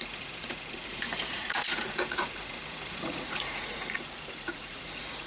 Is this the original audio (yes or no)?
no